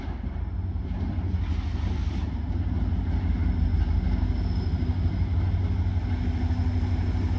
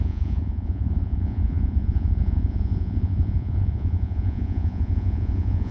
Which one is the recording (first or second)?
first